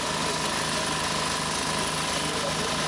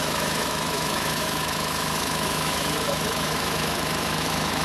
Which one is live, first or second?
first